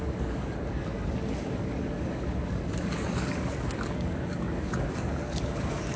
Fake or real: fake